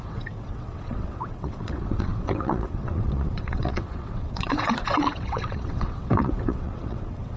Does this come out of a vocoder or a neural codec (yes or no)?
yes